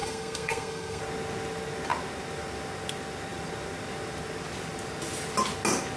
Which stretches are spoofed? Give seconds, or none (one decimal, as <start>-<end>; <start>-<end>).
0.0-1.0